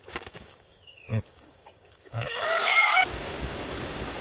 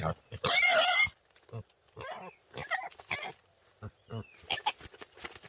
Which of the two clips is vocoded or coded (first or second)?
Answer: first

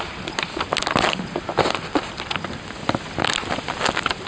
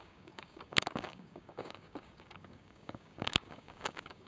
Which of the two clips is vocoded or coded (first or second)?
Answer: second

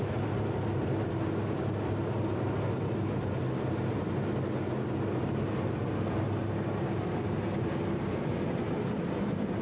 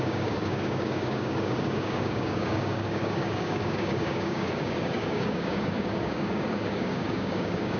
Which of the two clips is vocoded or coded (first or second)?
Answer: second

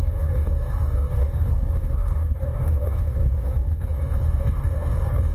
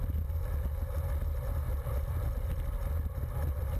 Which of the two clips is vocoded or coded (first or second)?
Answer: first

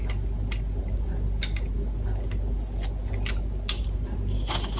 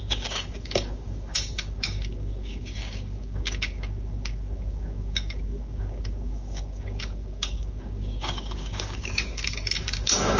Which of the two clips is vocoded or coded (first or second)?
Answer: second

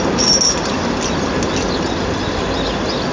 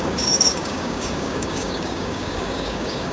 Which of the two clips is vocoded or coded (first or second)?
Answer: second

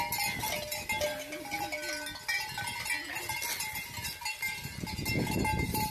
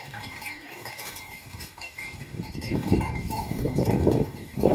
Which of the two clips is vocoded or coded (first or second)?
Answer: second